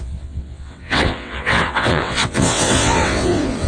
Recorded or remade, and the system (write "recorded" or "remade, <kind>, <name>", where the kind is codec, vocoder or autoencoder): remade, vocoder, WaveNeXt